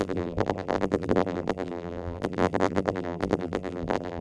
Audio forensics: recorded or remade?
remade